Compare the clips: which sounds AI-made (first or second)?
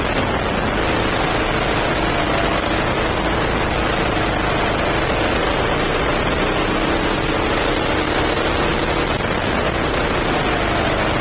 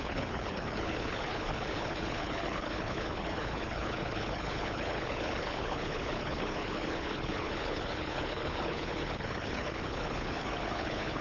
second